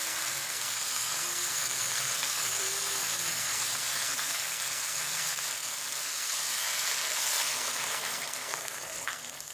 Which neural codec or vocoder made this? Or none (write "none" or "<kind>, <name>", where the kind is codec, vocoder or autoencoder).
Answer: codec, SNAC